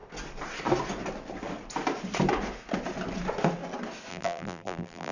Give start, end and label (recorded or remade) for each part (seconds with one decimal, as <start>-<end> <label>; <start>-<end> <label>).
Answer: 0.0-4.1 recorded; 4.1-5.1 remade